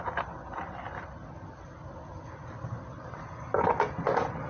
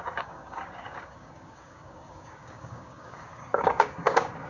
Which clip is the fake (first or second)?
second